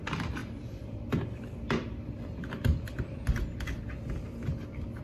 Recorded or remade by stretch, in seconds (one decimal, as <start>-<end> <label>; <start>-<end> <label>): 0.0-0.4 recorded; 0.4-3.4 remade; 3.4-5.0 recorded